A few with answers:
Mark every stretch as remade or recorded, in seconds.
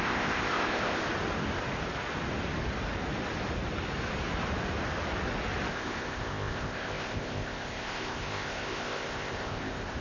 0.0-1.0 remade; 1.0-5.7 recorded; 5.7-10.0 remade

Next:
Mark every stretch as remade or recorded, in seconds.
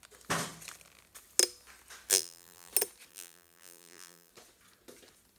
0.0-2.1 recorded; 2.1-2.7 remade; 2.7-3.1 recorded; 3.1-4.3 remade; 4.3-5.4 recorded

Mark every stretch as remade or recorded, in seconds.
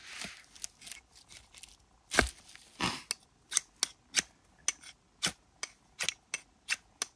0.0-7.2 recorded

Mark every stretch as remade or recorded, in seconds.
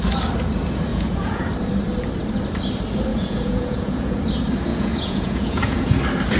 0.0-0.9 recorded; 0.9-1.5 remade; 1.5-3.1 recorded; 3.1-4.2 remade; 4.2-4.7 recorded; 4.7-6.0 remade; 6.0-6.4 recorded